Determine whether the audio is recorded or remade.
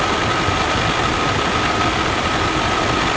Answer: recorded